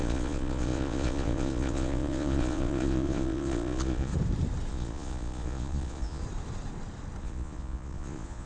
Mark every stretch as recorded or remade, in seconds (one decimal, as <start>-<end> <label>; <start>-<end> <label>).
0.0-4.1 remade; 4.1-4.7 recorded; 4.7-6.2 remade; 6.2-7.2 recorded; 7.2-8.5 remade